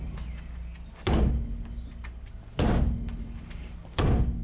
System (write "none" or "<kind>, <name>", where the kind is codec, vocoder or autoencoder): none